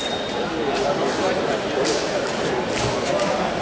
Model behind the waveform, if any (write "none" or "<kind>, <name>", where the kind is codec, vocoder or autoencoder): none